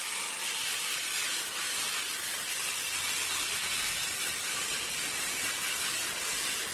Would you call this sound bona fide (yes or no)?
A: yes